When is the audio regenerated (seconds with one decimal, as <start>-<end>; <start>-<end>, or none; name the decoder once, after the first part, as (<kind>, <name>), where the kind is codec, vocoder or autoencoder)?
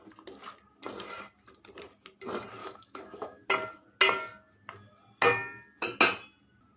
2.6-3.4 (autoencoder, DAC-VAE)